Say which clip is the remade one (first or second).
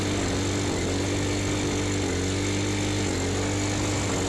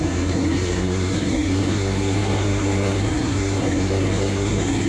second